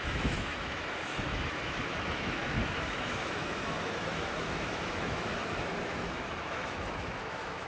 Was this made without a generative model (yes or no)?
no